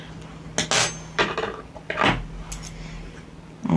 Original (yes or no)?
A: yes